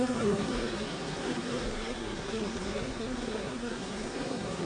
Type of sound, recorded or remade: remade